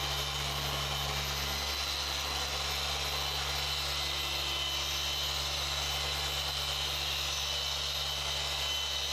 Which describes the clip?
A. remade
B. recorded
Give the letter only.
B